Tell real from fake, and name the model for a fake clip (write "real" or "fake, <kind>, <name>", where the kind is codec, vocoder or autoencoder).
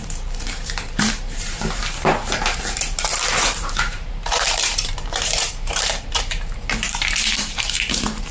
fake, vocoder, BigVGAN v2